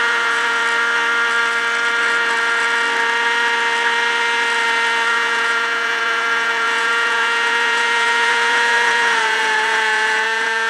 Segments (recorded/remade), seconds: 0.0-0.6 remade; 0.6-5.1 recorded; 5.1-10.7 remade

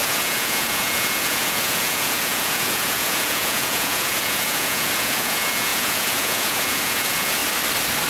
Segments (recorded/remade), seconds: 0.0-7.4 remade; 7.4-8.1 recorded